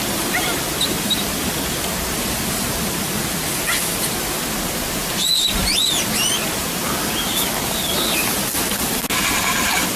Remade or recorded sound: recorded